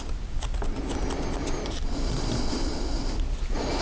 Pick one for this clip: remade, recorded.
recorded